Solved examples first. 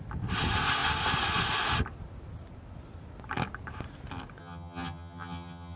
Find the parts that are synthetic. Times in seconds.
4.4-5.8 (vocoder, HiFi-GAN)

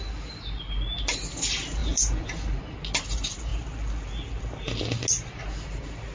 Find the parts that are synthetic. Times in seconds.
1.8-2.6 (vocoder, BigVGAN v2)

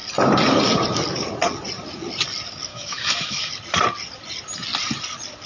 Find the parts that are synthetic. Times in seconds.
2.7-3.5 (autoencoder, DAC-VAE)